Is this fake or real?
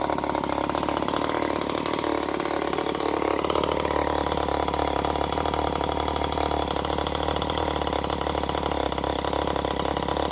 real